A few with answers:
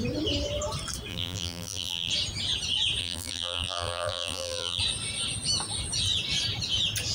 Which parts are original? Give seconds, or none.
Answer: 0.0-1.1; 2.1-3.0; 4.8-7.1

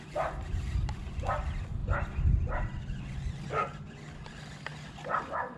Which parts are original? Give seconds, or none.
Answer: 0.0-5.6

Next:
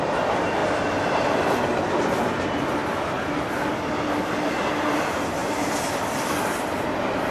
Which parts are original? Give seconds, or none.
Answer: 0.0-5.4